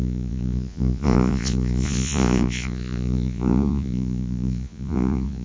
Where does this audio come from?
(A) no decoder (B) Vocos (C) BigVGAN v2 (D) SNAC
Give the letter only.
B